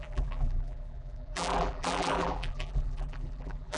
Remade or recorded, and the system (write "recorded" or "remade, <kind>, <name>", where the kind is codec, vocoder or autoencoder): remade, vocoder, BigVGAN v2